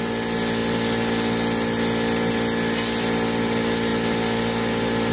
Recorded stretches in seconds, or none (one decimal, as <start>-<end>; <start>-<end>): 0.0-5.1